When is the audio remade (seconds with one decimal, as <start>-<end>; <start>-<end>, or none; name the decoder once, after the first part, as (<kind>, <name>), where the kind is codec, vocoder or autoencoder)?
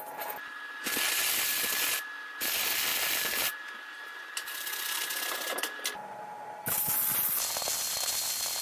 none